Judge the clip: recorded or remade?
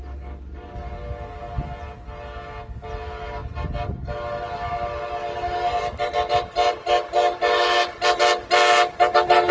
recorded